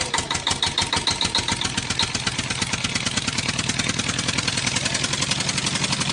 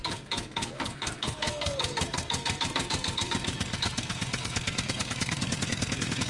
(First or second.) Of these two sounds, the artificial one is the second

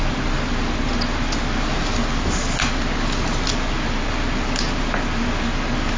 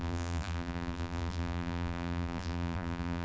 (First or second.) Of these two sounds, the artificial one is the second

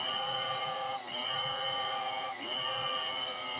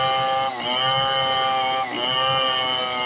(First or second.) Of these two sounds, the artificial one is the first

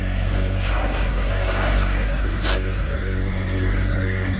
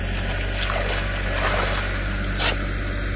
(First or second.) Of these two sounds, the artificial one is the first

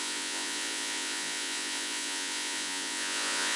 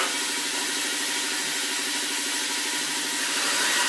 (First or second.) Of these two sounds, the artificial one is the first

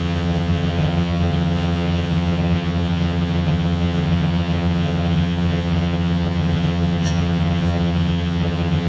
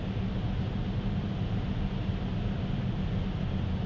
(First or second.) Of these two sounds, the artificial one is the first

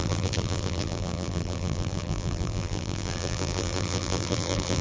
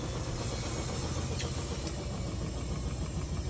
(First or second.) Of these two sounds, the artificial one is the first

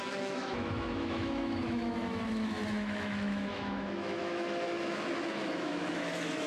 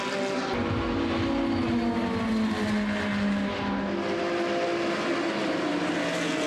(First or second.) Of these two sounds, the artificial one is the first